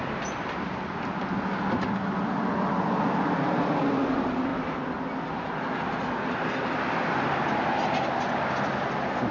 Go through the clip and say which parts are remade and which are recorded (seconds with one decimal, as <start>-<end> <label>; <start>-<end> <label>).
0.0-9.3 recorded